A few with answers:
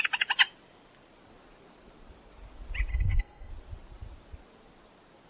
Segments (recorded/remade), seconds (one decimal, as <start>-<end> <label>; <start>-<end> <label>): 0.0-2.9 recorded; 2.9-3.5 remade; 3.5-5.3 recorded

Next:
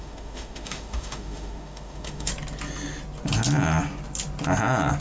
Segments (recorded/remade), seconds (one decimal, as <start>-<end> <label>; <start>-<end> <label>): 0.0-2.3 remade; 2.3-5.0 recorded

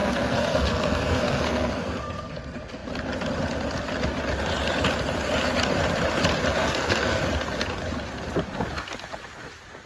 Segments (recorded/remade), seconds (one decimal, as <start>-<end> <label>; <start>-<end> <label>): 0.0-2.3 remade; 2.3-6.6 recorded; 6.6-7.2 remade; 7.2-9.9 recorded